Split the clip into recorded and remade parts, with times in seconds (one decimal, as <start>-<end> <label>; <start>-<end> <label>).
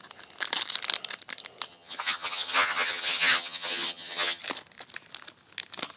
0.0-1.7 recorded; 1.7-4.4 remade; 4.4-6.0 recorded